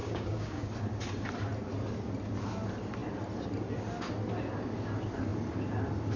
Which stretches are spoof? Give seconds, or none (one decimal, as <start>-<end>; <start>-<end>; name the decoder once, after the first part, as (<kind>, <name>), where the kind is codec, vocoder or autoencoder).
0.0-0.7 (codec, DAC)